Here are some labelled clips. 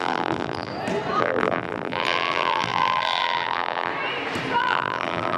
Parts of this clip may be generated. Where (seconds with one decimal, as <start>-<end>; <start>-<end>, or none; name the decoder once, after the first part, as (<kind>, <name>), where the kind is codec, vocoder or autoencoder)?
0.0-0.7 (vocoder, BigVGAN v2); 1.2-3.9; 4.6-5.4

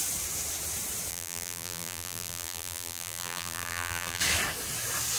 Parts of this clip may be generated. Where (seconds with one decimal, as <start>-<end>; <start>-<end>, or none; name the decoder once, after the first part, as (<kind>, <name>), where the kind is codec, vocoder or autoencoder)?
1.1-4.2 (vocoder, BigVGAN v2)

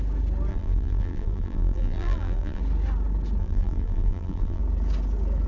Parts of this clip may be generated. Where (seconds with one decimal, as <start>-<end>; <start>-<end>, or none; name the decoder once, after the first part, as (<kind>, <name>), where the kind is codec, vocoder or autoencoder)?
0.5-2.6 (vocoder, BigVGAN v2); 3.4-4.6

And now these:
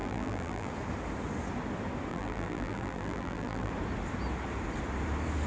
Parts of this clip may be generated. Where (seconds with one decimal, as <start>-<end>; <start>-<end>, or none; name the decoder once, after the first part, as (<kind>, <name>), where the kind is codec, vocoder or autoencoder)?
0.0-0.7 (vocoder, BigVGAN v2); 2.1-3.7

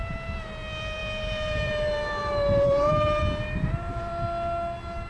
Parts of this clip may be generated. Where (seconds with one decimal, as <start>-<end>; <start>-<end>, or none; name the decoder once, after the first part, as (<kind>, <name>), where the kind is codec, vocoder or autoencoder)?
0.0-4.1 (vocoder, BigVGAN v2)

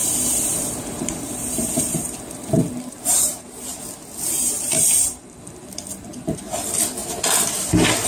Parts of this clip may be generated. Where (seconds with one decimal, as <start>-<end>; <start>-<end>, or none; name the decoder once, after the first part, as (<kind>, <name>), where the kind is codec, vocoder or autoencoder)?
0.0-3.9 (vocoder, BigVGAN v2); 4.4-5.4

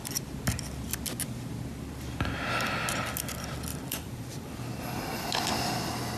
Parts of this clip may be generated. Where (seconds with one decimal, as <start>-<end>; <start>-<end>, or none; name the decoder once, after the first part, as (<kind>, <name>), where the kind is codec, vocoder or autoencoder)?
3.7-5.2 (vocoder, BigVGAN v2)

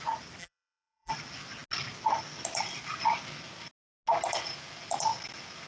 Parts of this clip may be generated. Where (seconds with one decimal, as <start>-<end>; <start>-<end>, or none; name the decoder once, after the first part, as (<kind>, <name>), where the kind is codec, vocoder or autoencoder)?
0.4-1.1 (vocoder, BigVGAN v2)